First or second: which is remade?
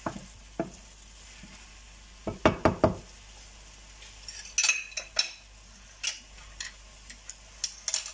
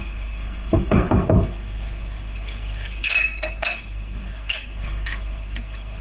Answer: second